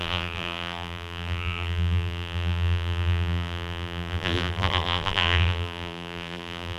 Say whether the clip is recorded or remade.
remade